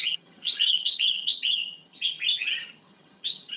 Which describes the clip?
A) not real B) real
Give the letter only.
A